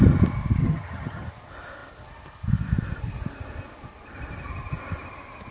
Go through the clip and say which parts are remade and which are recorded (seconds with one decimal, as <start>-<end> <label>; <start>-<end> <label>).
0.0-0.6 recorded; 0.6-1.3 remade; 1.3-5.5 recorded

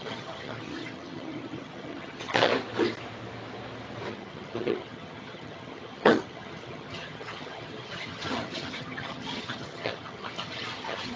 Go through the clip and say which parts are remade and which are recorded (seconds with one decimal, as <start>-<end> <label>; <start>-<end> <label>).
0.0-2.5 remade; 2.5-4.1 recorded; 4.1-11.2 remade